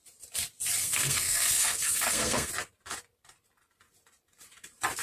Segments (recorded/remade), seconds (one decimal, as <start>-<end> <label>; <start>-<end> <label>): 0.0-0.8 recorded; 0.8-2.5 remade; 2.5-5.0 recorded